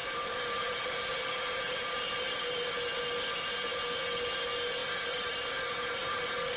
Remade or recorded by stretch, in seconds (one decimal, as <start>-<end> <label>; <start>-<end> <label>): 0.0-2.7 remade; 2.7-4.8 recorded; 4.8-5.3 remade; 5.3-6.6 recorded